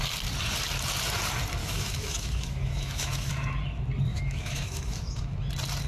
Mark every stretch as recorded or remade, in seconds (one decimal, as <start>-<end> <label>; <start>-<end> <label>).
0.0-1.6 recorded; 1.6-3.3 remade; 3.3-4.1 recorded; 4.1-5.4 remade; 5.4-5.9 recorded